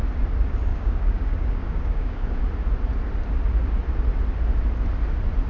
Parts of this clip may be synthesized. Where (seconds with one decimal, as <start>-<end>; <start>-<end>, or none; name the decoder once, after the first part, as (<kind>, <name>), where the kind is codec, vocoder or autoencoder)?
0.7-2.4 (codec, DAC)